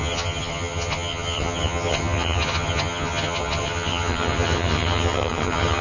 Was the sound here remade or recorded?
remade